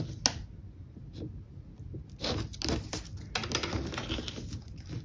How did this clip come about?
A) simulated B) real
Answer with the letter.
B